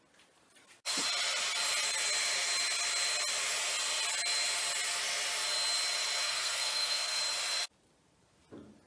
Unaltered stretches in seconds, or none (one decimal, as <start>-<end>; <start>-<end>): 0.0-6.2; 7.2-8.9